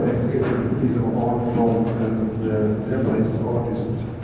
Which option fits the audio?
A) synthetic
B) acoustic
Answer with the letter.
B